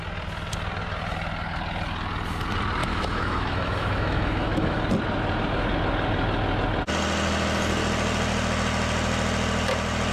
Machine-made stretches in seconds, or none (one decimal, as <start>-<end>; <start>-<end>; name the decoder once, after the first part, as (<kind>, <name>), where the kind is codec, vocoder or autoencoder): 2.8-4.8 (autoencoder, DAC-VAE)